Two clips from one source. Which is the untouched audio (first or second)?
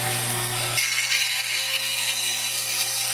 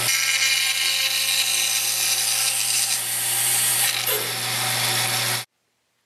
second